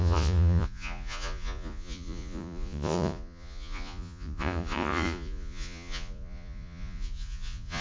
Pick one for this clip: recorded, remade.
remade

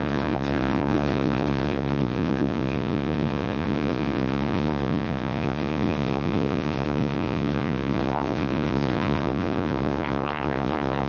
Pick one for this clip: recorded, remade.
remade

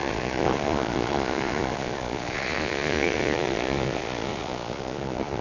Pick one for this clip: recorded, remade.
remade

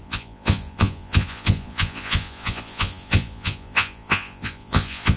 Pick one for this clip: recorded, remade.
remade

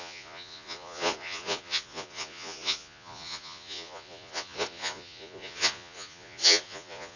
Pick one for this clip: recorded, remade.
remade